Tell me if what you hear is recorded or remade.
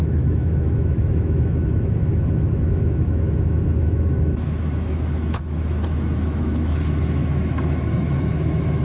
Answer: remade